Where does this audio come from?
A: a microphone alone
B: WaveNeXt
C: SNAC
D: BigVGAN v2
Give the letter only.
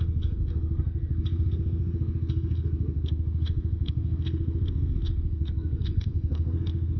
C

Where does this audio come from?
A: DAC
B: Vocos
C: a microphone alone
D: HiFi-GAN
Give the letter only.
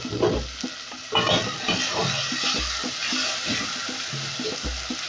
C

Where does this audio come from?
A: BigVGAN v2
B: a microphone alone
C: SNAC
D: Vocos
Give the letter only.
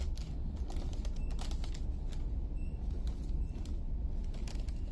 B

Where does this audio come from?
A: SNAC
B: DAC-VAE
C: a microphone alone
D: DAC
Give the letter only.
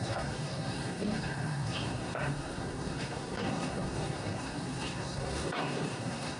A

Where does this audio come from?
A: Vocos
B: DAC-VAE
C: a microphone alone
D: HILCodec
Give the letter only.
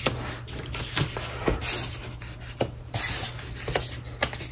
C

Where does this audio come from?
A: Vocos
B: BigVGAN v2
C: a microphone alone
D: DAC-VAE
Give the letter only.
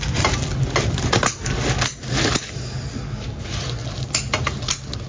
C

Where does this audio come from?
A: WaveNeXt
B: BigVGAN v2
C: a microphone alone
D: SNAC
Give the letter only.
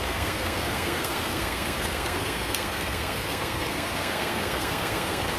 D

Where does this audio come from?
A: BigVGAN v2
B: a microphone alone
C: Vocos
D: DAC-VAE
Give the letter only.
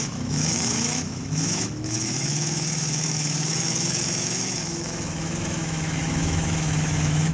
D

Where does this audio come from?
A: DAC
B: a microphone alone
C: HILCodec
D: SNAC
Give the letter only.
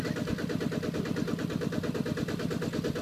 B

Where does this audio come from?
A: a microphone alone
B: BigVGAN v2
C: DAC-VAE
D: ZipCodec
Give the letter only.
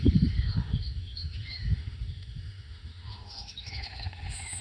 C